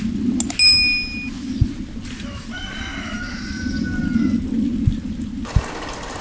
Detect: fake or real real